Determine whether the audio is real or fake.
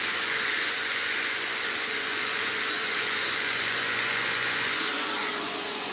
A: fake